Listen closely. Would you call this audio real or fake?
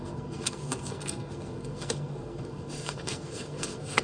fake